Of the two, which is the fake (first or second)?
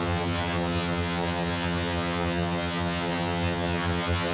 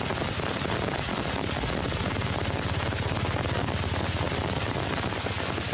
first